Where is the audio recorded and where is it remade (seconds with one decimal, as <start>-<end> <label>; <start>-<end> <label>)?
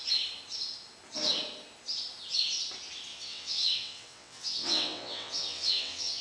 0.0-3.1 recorded; 3.1-6.2 remade